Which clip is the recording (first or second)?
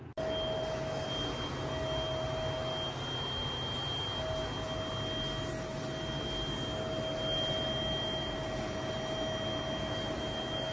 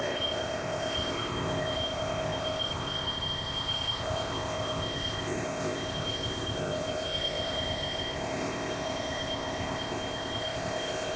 first